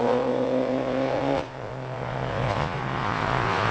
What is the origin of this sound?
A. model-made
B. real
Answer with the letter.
A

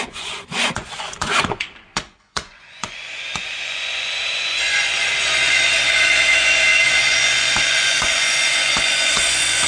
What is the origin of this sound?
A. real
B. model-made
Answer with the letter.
B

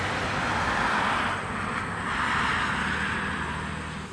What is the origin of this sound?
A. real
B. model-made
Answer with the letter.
A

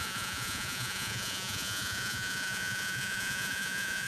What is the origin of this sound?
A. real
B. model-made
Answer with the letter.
B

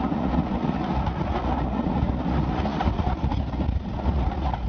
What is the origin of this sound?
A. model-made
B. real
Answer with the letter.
A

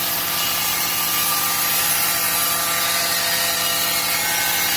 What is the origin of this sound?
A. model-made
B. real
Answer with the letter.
B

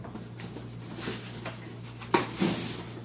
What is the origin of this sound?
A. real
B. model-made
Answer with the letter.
A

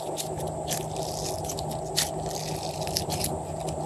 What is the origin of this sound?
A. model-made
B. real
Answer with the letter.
B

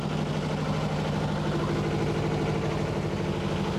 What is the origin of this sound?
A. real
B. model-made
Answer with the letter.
A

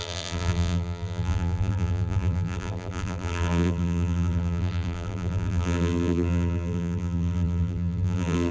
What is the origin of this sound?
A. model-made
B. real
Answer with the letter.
A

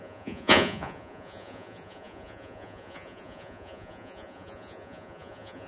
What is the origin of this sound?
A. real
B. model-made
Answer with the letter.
B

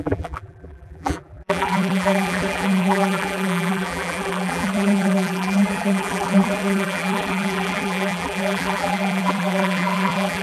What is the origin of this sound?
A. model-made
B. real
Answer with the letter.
A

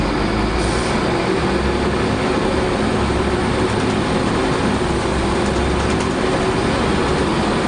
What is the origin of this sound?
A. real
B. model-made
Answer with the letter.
A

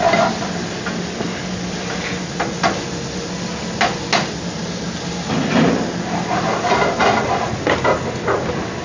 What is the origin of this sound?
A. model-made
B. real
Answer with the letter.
B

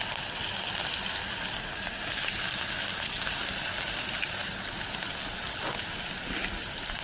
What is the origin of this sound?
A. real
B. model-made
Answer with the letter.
A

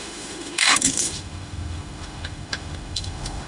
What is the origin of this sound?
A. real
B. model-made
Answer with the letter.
B